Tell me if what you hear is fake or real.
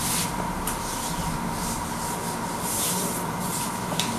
real